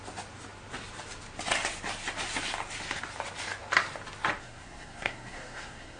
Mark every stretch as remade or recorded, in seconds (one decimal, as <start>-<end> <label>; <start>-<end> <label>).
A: 0.0-4.4 recorded; 4.4-6.0 remade